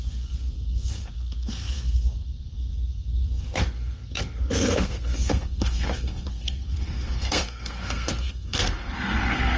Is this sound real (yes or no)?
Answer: no